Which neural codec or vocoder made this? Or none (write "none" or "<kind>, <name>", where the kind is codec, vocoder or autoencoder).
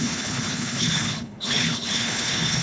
codec, HILCodec